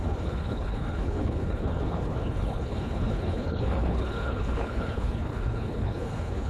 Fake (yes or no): yes